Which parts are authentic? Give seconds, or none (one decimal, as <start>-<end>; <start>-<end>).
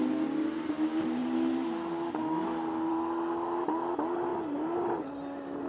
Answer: 0.0-5.7